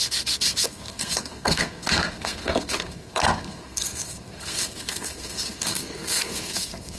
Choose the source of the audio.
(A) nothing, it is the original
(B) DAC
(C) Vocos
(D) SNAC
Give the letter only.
D